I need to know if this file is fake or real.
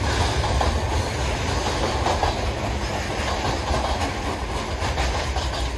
real